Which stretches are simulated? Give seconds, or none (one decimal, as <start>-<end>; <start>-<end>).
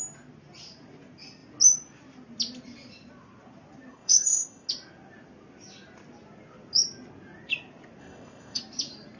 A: 3.9-4.7; 8.0-8.6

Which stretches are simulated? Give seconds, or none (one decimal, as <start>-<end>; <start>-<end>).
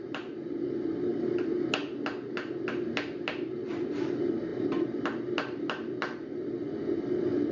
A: none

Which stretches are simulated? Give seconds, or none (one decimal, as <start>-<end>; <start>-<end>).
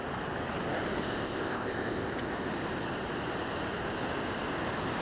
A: 1.0-2.0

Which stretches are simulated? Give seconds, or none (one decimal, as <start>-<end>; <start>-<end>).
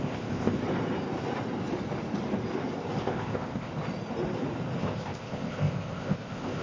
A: 0.0-0.6; 3.0-3.7; 4.8-6.6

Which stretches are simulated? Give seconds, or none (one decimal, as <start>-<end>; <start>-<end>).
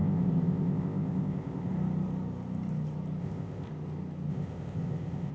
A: 0.0-1.7; 3.2-3.7; 4.3-5.3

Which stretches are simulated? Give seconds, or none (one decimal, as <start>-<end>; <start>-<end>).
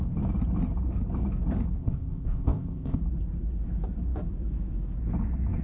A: 1.8-3.0